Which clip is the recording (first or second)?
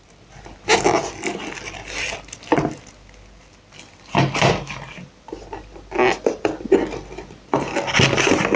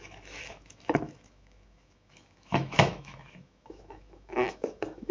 first